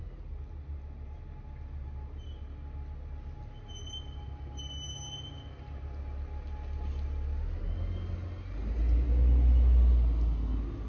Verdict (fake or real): real